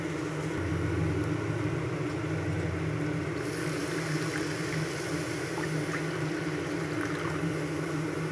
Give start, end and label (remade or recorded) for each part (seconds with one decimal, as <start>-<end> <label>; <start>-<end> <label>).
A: 0.0-8.3 recorded